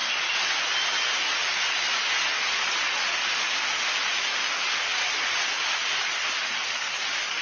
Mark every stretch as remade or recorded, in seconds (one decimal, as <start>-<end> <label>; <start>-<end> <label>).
0.0-7.4 recorded